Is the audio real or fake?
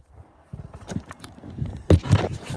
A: fake